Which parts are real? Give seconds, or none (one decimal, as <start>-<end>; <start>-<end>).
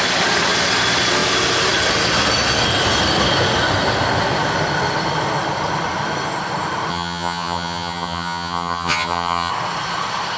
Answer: 0.0-6.9; 9.5-10.4